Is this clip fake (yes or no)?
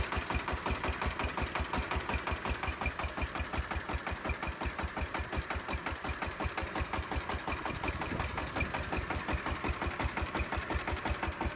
no